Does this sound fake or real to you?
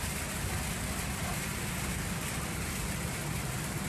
real